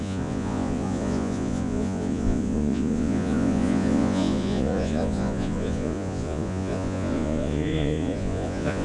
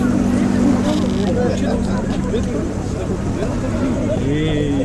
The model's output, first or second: first